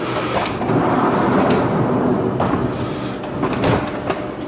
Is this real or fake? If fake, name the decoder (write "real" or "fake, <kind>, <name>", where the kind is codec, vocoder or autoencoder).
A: real